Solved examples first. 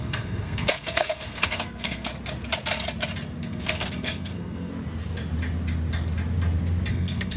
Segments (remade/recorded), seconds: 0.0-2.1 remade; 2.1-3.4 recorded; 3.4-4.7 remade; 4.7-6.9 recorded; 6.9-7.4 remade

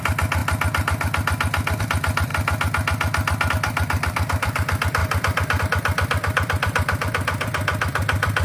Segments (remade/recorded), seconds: 0.0-0.4 remade; 0.4-1.8 recorded; 1.8-2.3 remade; 2.3-3.5 recorded; 3.5-8.4 remade

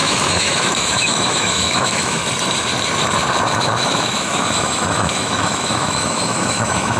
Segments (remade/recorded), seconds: 0.0-2.2 remade; 2.2-3.6 recorded; 3.6-7.0 remade

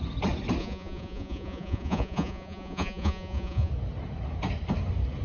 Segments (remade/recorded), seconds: 0.0-0.6 recorded; 0.6-3.7 remade; 3.7-5.2 recorded

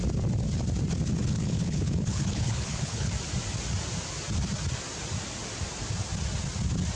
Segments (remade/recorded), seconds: 0.0-1.2 recorded; 1.2-3.1 remade; 3.1-7.0 recorded

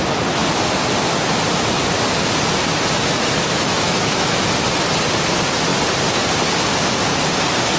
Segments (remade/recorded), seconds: 0.0-3.7 recorded; 3.7-4.4 remade; 4.4-7.8 recorded

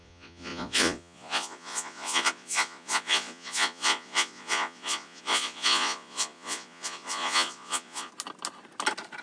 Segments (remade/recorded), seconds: 0.0-8.1 remade; 8.1-9.2 recorded